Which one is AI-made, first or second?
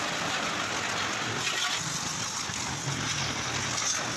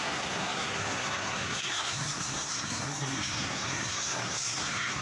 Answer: second